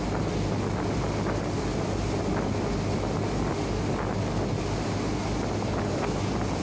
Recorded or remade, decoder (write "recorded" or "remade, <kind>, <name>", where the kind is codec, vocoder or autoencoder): recorded